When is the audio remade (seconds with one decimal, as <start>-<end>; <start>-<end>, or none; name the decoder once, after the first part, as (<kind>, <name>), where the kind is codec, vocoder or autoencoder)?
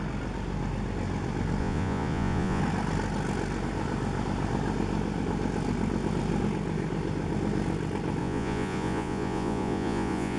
1.6-2.6 (vocoder, Vocos); 8.2-10.4